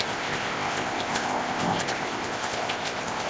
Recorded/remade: remade